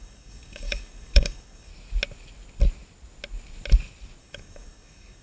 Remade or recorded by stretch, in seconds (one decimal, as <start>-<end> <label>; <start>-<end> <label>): 0.0-1.7 remade; 1.7-4.2 recorded; 4.2-5.2 remade